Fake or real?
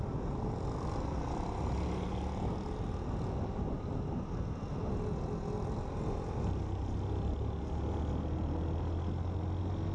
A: real